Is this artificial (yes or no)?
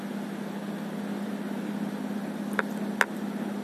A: no